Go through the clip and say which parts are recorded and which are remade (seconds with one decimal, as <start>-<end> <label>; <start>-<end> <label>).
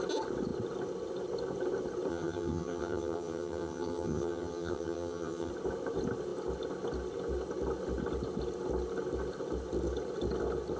0.0-2.1 recorded; 2.1-5.5 remade; 5.5-10.8 recorded